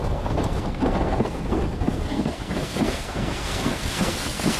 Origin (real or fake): fake